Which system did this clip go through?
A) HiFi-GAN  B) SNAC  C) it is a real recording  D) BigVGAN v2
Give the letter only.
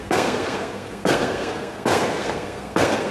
B